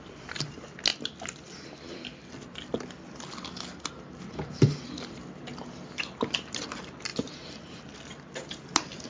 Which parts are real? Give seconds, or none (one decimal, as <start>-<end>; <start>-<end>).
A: 0.0-9.1